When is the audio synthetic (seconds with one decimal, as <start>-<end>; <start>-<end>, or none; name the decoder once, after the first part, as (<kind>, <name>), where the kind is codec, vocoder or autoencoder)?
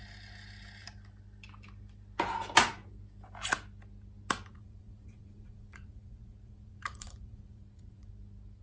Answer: 4.5-8.1 (vocoder, Vocos)